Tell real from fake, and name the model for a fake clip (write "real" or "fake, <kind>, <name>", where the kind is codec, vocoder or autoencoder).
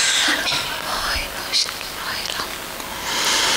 real